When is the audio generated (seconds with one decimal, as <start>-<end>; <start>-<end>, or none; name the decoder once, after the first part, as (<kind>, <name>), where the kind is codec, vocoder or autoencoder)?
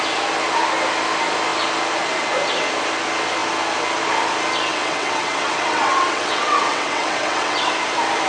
4.7-7.7 (vocoder, WaveNeXt)